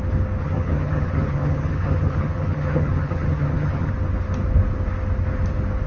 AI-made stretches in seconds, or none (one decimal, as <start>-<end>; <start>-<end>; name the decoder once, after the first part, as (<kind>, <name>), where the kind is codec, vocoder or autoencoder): 0.4-3.9 (vocoder, HiFi-GAN)